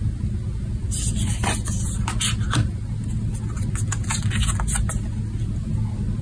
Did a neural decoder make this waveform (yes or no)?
no